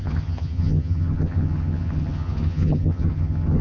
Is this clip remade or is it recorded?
remade